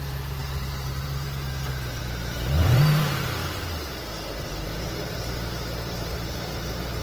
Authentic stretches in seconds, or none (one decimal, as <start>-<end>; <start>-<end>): 3.4-4.4